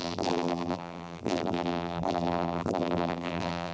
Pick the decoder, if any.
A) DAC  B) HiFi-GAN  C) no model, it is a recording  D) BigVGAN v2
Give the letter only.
D